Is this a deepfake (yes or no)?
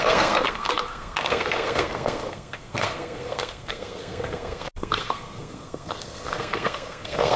yes